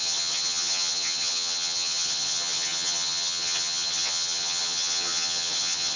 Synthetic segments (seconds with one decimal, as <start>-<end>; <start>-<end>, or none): 0.0-6.0